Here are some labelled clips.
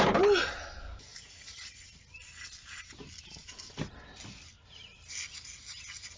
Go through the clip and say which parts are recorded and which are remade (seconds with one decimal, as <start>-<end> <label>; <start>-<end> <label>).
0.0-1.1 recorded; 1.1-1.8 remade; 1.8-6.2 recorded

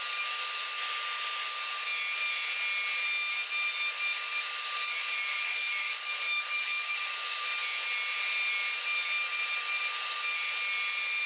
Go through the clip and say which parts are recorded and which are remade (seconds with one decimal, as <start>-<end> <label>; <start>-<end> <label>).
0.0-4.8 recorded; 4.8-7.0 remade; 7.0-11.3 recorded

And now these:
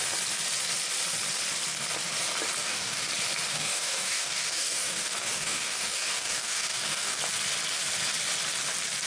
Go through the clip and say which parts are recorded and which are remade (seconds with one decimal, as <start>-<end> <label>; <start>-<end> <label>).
0.0-2.6 recorded; 2.6-3.1 remade; 3.1-3.5 recorded; 3.5-7.2 remade; 7.2-9.1 recorded

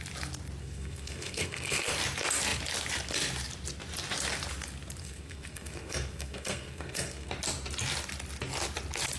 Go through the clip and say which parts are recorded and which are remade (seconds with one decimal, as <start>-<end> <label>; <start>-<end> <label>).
0.0-0.6 recorded; 0.6-1.9 remade; 1.9-5.0 recorded; 5.0-7.3 remade; 7.3-9.2 recorded

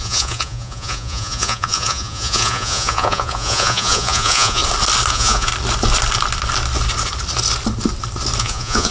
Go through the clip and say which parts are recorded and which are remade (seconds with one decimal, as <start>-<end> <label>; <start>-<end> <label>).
0.0-4.6 remade; 4.6-5.1 recorded; 5.1-5.5 remade; 5.5-8.4 recorded; 8.4-8.9 remade

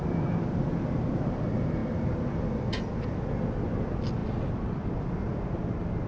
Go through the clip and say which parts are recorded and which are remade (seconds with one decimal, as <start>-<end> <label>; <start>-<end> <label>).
0.0-6.1 recorded

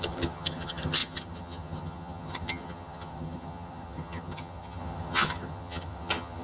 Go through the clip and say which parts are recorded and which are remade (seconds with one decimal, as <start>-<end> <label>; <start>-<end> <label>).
0.0-6.4 remade